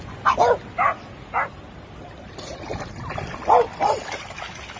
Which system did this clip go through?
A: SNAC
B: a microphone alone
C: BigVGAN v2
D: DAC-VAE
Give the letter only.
B